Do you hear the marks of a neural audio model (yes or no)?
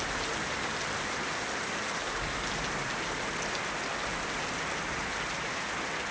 no